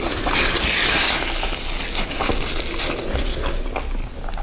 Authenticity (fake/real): real